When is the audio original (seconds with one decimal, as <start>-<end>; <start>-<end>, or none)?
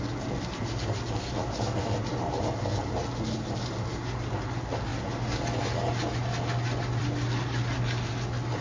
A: 0.0-8.6